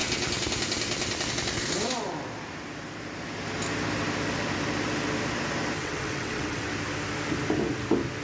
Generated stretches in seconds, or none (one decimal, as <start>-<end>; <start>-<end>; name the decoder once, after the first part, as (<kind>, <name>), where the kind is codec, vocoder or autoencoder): 5.8-6.7 (vocoder, WaveNeXt)